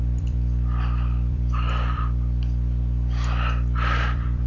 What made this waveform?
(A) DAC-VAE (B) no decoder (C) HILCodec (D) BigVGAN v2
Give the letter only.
D